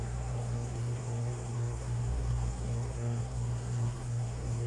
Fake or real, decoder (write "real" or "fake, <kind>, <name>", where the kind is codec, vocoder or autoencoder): fake, codec, SNAC